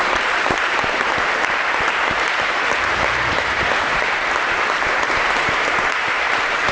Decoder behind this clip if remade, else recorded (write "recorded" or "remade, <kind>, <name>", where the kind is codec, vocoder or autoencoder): remade, vocoder, BigVGAN v2